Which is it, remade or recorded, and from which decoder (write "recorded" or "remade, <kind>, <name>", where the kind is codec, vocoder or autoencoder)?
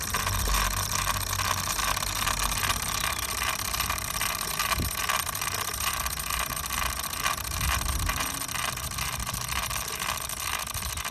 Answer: recorded